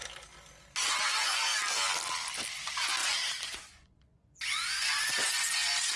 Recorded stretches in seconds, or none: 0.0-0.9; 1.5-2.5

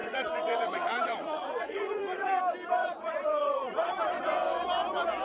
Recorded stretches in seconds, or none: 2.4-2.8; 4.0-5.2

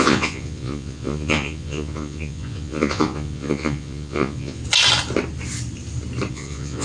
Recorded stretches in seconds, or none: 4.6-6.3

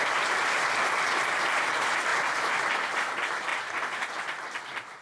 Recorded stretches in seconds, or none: 0.0-5.0

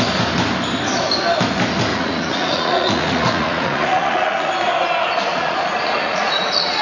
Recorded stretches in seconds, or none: 0.0-1.9; 4.5-5.3

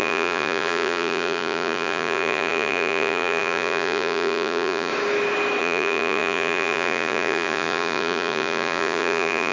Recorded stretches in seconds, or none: 4.9-5.6